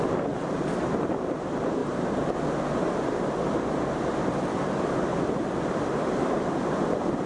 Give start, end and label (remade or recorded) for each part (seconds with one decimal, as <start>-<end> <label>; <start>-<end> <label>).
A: 0.0-7.3 recorded

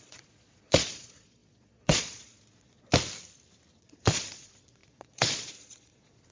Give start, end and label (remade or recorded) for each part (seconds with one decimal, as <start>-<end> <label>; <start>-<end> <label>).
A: 0.0-2.9 remade; 2.9-3.7 recorded; 3.7-6.3 remade